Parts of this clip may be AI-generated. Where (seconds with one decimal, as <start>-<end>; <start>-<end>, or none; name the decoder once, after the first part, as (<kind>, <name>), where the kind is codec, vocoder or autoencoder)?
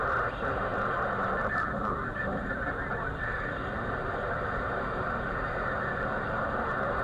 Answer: 0.0-7.0 (vocoder, BigVGAN v2)